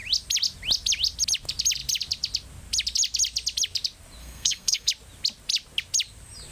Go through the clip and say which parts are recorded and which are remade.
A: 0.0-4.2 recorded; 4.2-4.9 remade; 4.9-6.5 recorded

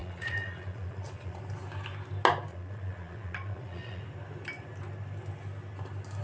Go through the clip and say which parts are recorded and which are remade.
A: 0.0-1.4 remade; 1.4-2.5 recorded; 2.5-4.0 remade; 4.0-6.2 recorded

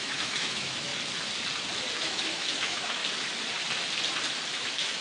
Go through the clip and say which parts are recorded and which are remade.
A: 0.0-0.9 remade; 0.9-2.0 recorded; 2.0-3.0 remade; 3.0-4.6 recorded; 4.6-5.0 remade

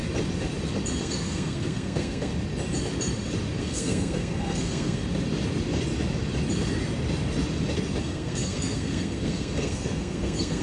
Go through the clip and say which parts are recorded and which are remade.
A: 0.0-1.0 recorded; 1.0-2.3 remade; 2.3-3.6 recorded; 3.6-5.0 remade; 5.0-8.0 recorded; 8.0-10.6 remade

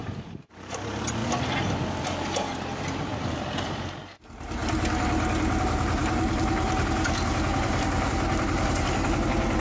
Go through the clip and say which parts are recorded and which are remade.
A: 0.0-1.2 remade; 1.2-2.9 recorded; 2.9-4.6 remade; 4.6-5.6 recorded; 5.6-9.6 remade

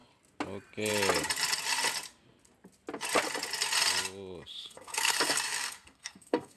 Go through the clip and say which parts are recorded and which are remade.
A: 0.0-4.5 recorded; 4.5-6.6 remade

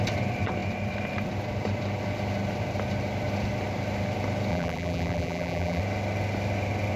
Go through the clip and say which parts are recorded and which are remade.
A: 0.0-4.5 recorded; 4.5-5.8 remade; 5.8-7.0 recorded